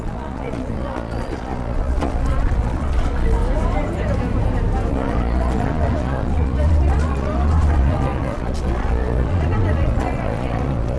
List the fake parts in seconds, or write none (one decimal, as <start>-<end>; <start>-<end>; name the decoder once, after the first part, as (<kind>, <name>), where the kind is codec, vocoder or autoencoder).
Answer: 0.0-3.4 (vocoder, Vocos); 4.9-11.0